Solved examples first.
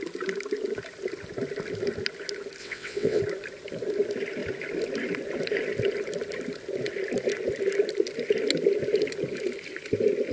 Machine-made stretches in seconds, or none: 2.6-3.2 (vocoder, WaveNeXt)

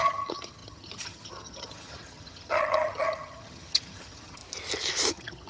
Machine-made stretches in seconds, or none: 0.0-4.4 (vocoder, HiFi-GAN); 5.1-5.5